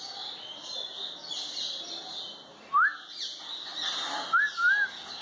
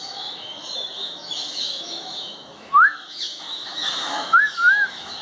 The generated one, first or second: second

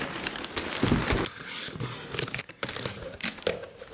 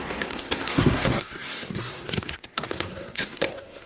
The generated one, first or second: second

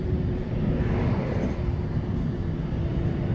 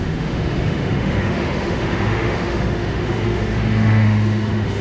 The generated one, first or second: second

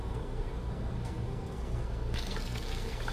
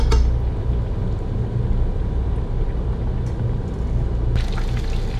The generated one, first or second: first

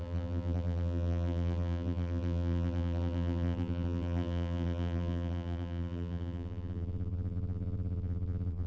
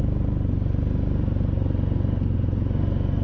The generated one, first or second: first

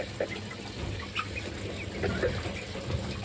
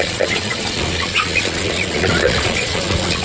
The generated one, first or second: second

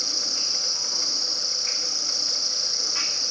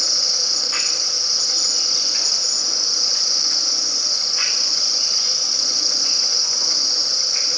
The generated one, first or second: second